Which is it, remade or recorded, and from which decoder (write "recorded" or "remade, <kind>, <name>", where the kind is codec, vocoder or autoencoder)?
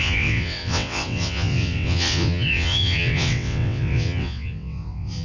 remade, vocoder, WaveNeXt